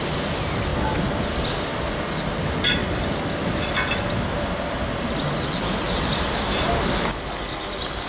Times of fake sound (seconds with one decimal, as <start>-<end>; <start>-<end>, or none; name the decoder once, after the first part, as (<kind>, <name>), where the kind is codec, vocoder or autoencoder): none